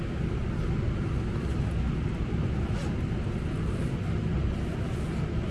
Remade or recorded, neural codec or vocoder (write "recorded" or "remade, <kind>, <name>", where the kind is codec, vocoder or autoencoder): recorded